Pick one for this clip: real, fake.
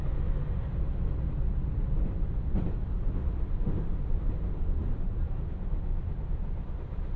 real